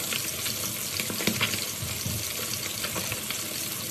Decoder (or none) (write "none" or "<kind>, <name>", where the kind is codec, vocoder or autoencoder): none